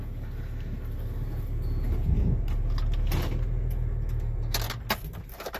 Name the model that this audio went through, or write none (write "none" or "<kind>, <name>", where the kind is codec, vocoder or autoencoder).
none